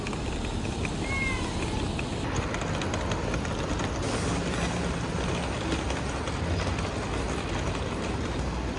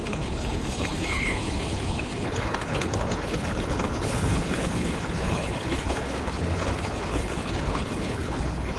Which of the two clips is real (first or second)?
first